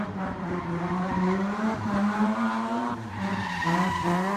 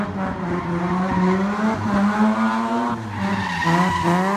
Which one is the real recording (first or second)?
second